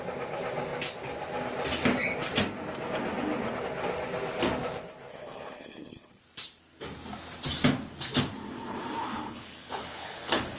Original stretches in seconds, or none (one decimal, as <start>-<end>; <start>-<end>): 0.0-5.1; 6.2-9.0